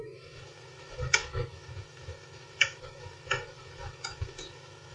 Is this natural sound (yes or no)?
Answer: no